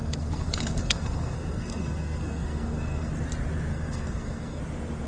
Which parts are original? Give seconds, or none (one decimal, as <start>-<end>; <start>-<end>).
3.1-3.7; 4.6-5.1